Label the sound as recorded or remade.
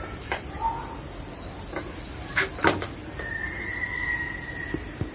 recorded